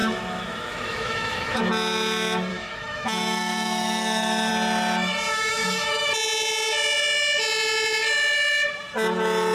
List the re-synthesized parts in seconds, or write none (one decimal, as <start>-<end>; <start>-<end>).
0.0-1.6; 2.5-4.5; 5.3-6.1